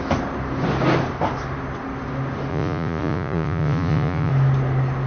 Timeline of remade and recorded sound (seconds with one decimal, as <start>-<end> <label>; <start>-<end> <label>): 0.0-2.5 recorded; 2.5-4.3 remade; 4.3-5.1 recorded